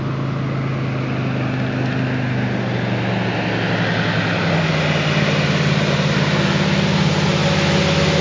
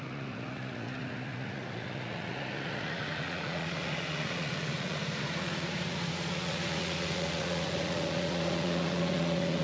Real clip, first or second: first